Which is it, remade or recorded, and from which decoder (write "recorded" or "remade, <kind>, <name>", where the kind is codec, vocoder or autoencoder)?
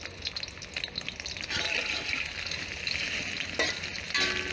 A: recorded